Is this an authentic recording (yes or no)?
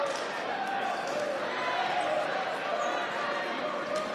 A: yes